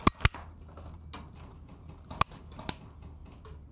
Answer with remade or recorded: recorded